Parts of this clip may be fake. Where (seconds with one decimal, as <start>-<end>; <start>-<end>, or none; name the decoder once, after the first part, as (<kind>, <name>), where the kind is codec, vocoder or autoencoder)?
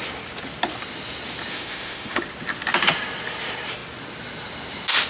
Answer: 1.5-2.2 (autoencoder, DAC-VAE)